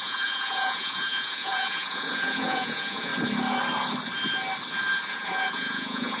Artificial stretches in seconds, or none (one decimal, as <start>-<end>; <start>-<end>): 0.0-3.1; 5.1-6.2